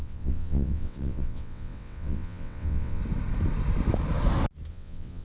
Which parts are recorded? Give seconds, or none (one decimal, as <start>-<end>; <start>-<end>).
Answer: 3.0-4.7